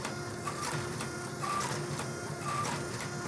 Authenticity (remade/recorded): recorded